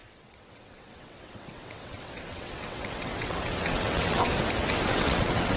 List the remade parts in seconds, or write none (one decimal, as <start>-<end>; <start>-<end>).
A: 0.0-4.3; 4.9-5.6